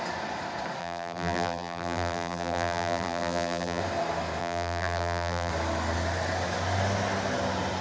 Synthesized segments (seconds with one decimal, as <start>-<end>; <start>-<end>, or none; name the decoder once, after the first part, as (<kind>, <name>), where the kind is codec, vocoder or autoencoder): 0.8-3.8 (vocoder, BigVGAN v2); 4.4-5.5